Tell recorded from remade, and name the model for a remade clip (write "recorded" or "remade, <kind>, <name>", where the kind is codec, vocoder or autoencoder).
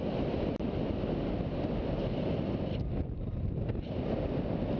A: recorded